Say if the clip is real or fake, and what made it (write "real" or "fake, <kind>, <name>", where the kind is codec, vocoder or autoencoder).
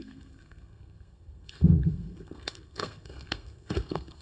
fake, codec, SNAC